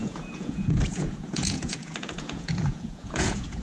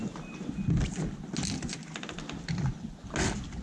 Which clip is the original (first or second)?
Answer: second